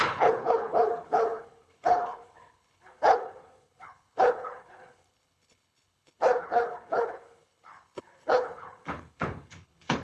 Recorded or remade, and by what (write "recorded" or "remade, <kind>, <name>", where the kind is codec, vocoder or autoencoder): remade, codec, HILCodec